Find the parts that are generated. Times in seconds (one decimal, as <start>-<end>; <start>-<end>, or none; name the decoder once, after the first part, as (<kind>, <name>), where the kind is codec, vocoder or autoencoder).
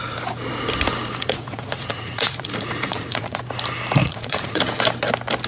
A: 1.2-3.4 (vocoder, Vocos); 4.0-4.6